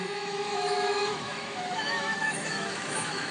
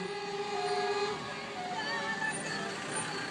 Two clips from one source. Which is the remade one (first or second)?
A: first